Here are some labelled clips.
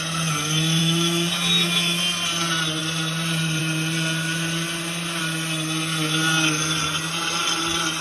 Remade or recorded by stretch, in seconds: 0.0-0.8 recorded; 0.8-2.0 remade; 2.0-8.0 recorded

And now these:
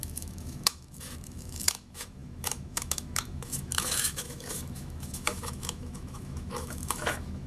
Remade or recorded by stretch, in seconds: 0.0-7.5 remade